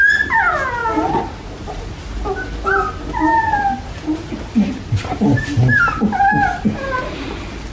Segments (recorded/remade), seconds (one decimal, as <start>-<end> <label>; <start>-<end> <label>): 0.0-7.7 recorded